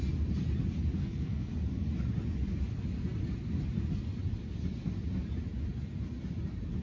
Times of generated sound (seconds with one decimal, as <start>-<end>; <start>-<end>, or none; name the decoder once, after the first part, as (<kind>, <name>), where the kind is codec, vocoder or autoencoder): 1.0-1.5 (codec, SNAC)